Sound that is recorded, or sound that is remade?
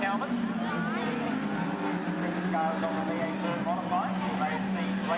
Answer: recorded